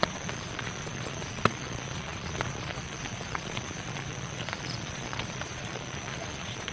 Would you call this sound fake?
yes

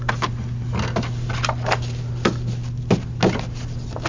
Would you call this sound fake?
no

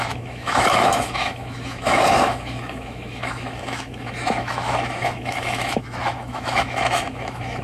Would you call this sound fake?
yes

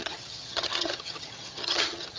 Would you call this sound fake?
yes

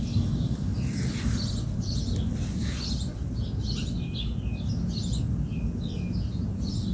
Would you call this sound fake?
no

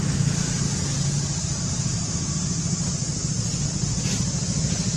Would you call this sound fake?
no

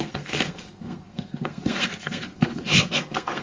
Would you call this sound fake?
yes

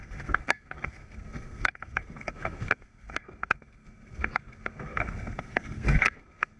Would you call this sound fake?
yes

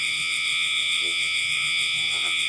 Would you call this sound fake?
yes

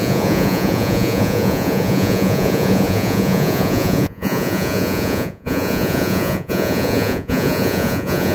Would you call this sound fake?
yes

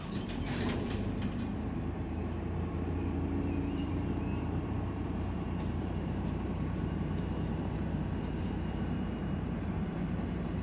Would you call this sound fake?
yes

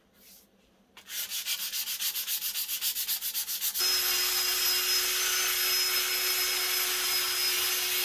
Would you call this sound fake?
no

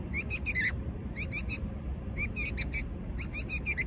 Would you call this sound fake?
no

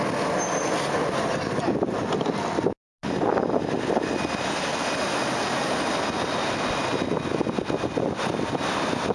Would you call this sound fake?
no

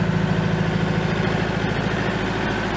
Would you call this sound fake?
no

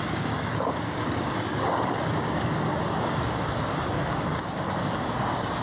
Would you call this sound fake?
yes